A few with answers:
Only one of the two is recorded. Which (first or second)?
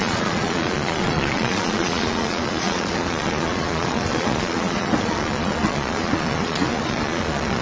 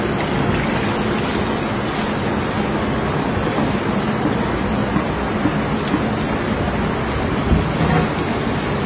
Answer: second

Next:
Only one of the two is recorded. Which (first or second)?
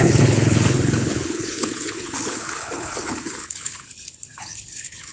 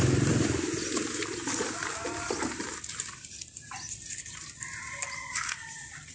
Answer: second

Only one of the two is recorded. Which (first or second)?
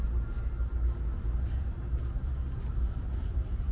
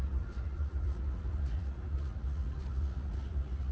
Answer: first